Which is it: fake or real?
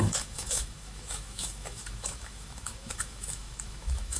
fake